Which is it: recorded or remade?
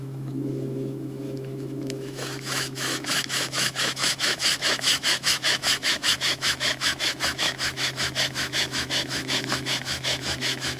remade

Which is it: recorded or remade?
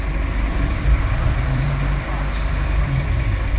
remade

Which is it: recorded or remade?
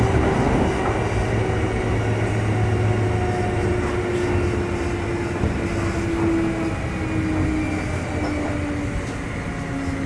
recorded